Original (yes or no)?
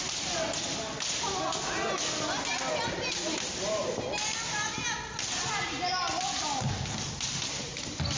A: yes